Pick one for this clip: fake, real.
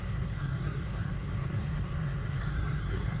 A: fake